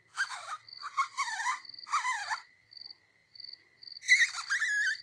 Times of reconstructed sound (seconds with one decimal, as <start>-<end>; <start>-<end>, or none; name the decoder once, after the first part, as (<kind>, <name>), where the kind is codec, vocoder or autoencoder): none